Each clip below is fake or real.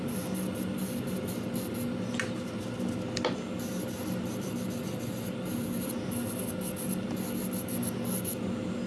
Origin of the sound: real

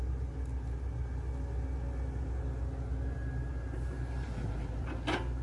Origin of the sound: real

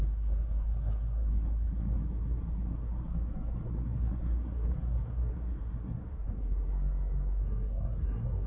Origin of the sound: fake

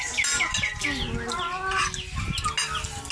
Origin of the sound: real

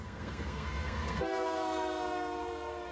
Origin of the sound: fake